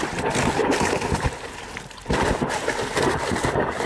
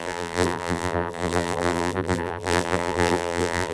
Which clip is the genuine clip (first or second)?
first